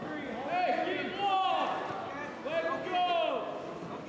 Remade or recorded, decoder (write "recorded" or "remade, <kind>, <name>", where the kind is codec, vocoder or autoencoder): recorded